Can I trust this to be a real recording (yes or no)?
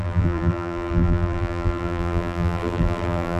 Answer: no